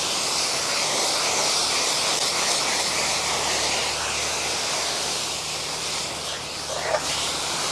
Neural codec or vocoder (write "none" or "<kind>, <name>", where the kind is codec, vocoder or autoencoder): vocoder, BigVGAN v2